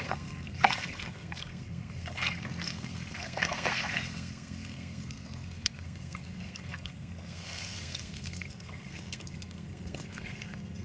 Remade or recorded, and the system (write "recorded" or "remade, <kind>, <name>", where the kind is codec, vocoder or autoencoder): remade, codec, SNAC